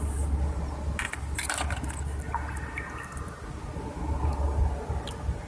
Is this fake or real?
real